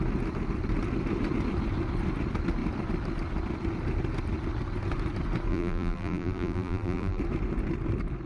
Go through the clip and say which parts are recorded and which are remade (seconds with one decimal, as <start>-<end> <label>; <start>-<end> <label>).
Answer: 0.0-5.5 recorded; 5.5-7.2 remade; 7.2-8.3 recorded